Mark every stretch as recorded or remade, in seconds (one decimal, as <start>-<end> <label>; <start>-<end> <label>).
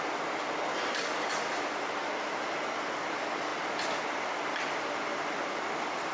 0.0-6.1 recorded